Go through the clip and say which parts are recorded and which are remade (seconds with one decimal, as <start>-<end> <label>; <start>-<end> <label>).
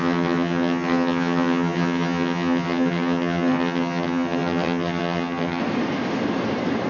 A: 0.0-5.6 remade; 5.6-6.9 recorded